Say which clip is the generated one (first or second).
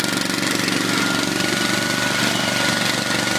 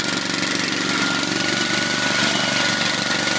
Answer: second